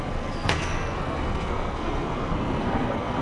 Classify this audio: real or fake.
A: fake